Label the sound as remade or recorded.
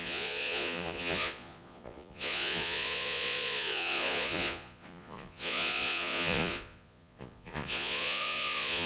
remade